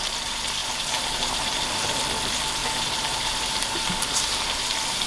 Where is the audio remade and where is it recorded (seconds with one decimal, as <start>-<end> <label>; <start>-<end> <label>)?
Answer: 0.0-0.6 recorded; 0.6-1.7 remade; 1.7-2.6 recorded; 2.6-5.1 remade

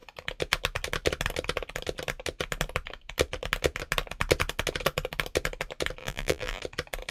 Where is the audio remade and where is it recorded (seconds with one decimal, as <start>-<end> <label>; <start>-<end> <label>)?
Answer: 0.0-6.0 recorded; 6.0-6.6 remade; 6.6-7.1 recorded

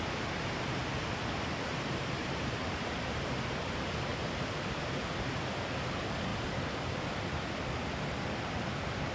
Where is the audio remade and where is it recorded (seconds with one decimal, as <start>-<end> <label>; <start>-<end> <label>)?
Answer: 0.0-1.7 recorded; 1.7-3.3 remade; 3.3-4.1 recorded; 4.1-4.8 remade; 4.8-9.1 recorded

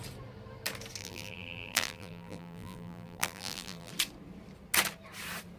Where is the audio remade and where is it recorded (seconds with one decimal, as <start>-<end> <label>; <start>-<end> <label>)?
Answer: 0.0-1.0 recorded; 1.0-3.9 remade; 3.9-5.6 recorded